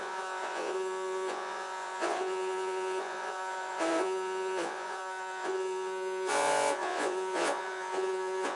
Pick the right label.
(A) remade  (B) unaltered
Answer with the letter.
A